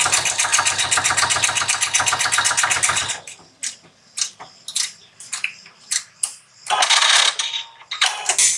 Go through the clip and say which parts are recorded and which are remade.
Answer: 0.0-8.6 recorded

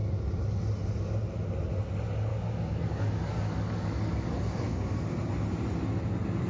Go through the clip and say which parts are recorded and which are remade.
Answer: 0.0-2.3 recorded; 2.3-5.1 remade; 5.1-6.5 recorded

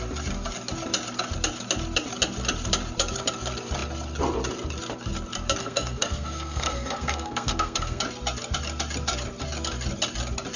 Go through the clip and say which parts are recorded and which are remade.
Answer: 0.0-5.6 recorded; 5.6-8.0 remade; 8.0-10.6 recorded

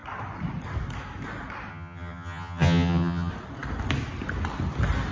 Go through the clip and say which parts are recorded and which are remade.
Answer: 0.0-1.7 recorded; 1.7-3.3 remade; 3.3-5.1 recorded

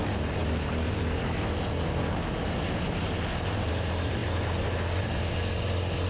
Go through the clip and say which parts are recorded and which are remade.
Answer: 0.0-6.1 recorded

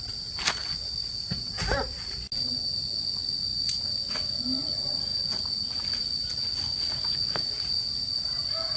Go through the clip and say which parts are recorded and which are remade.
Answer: 0.0-8.8 recorded